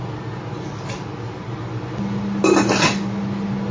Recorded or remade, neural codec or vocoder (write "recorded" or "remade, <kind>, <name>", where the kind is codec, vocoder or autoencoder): recorded